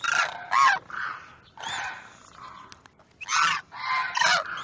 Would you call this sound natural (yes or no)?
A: yes